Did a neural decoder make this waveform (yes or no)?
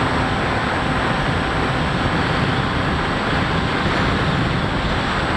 no